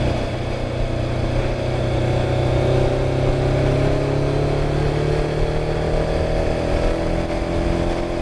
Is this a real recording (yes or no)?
yes